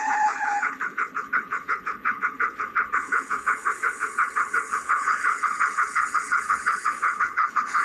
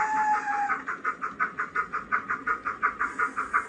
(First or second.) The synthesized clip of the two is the first